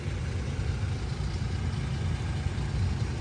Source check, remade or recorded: recorded